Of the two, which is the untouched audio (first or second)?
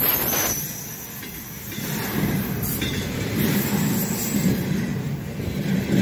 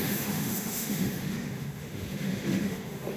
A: first